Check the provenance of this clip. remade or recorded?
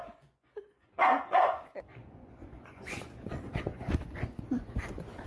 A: remade